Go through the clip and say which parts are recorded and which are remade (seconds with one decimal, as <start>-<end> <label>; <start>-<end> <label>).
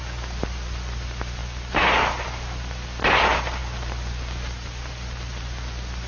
0.0-6.1 recorded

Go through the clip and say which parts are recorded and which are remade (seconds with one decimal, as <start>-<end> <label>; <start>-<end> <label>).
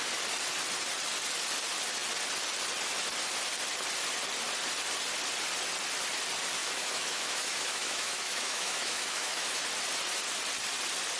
0.0-6.6 recorded; 6.6-9.6 remade; 9.6-11.2 recorded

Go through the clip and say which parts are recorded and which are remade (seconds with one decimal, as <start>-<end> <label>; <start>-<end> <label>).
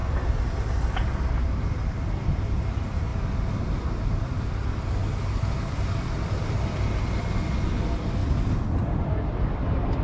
0.0-10.0 remade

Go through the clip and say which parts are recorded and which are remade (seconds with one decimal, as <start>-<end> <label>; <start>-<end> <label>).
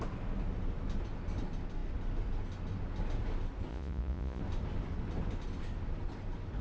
0.0-3.7 recorded; 3.7-4.4 remade; 4.4-6.6 recorded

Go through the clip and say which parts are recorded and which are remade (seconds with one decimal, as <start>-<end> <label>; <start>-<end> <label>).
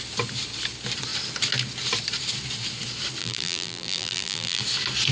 0.0-3.2 recorded; 3.2-4.6 remade; 4.6-5.1 recorded